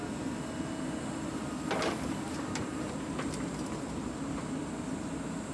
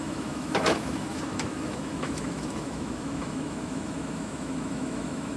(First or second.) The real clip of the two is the first